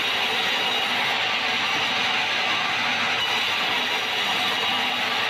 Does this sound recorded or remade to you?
recorded